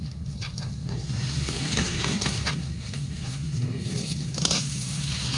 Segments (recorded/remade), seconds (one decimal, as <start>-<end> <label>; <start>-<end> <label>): 0.0-5.4 remade